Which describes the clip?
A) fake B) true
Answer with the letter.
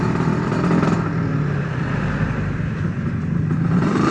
A